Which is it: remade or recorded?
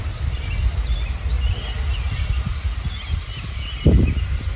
recorded